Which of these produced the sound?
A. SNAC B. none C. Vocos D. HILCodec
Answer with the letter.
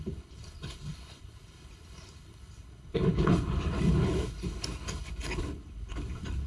D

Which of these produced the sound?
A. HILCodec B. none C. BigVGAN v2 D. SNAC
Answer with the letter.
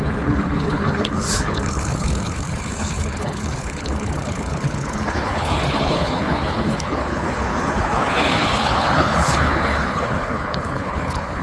A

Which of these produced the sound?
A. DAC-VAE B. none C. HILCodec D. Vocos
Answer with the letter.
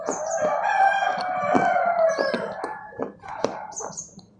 B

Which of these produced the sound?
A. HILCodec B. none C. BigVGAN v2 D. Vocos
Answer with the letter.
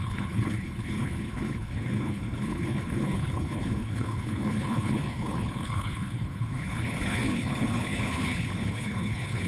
A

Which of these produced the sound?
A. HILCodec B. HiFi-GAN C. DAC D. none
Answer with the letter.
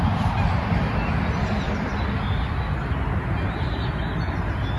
D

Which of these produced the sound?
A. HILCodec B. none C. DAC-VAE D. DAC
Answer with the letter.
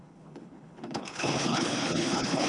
A